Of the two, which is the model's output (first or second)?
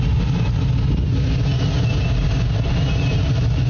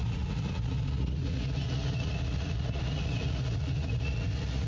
second